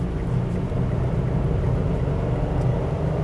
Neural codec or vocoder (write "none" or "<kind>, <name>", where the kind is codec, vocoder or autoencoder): none